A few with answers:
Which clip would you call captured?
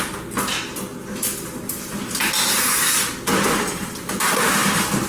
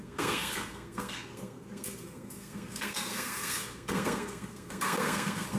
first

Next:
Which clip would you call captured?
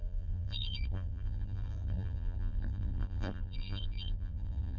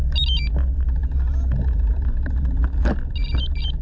second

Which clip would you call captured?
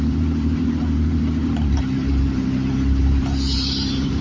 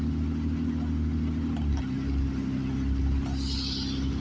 second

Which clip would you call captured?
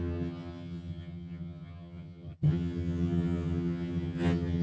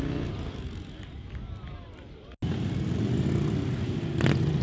second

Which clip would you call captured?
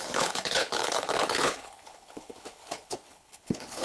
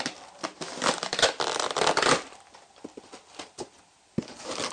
second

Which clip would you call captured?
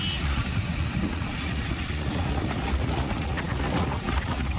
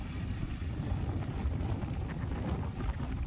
second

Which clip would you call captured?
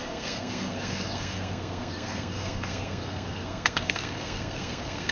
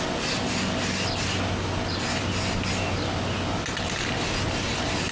second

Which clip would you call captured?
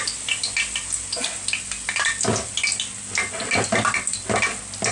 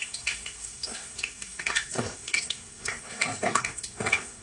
first